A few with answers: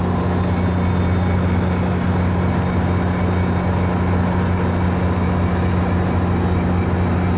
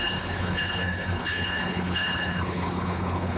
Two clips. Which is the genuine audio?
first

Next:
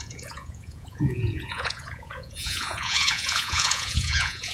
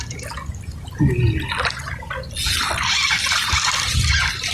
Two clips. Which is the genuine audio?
second